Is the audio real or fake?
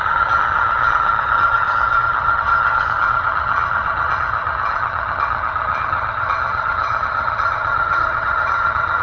fake